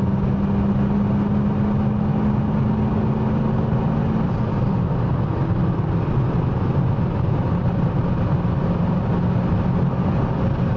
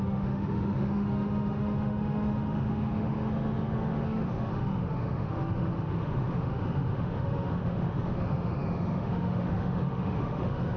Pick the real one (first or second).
first